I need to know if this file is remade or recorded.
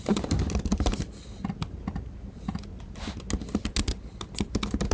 recorded